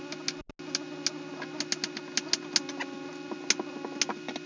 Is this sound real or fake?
real